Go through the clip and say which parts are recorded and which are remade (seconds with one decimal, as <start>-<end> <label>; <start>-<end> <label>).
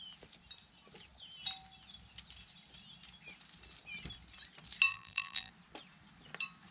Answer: 0.0-4.9 recorded; 4.9-5.5 remade; 5.5-6.7 recorded